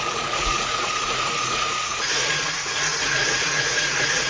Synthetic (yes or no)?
yes